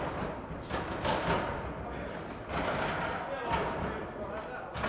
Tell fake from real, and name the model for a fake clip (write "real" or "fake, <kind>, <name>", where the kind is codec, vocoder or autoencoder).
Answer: real